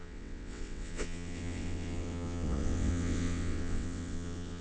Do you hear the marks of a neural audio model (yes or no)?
yes